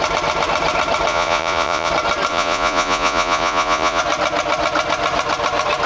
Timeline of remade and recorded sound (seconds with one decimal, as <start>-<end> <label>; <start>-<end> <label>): 0.0-1.1 recorded; 1.1-1.9 remade; 1.9-2.3 recorded; 2.3-4.0 remade; 4.0-5.9 recorded

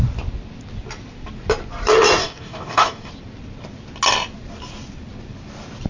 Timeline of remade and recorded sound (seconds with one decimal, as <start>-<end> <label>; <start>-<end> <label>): 0.0-2.2 recorded; 2.2-3.1 remade; 3.1-5.9 recorded

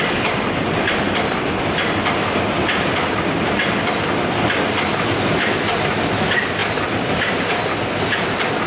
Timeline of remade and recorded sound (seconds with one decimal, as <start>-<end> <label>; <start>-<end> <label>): 0.0-8.7 recorded

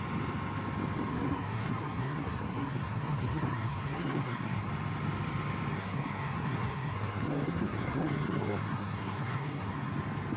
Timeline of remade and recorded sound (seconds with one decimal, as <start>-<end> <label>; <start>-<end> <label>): 0.0-1.1 recorded; 1.1-4.7 remade; 4.7-5.7 recorded; 5.7-9.9 remade; 9.9-10.4 recorded